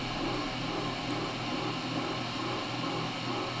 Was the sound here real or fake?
real